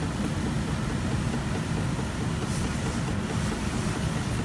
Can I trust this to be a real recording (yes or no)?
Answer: yes